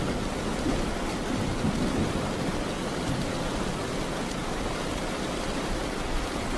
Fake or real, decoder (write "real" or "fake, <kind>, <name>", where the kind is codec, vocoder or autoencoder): fake, vocoder, BigVGAN v2